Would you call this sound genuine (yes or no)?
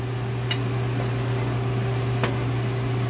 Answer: yes